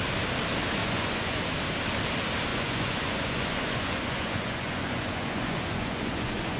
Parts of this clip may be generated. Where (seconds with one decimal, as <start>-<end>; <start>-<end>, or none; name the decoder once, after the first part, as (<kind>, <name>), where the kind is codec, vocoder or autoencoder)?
0.8-1.4 (vocoder, Vocos); 2.5-6.6